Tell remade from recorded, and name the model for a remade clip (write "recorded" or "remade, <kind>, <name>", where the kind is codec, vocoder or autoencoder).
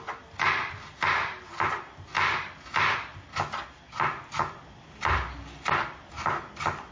recorded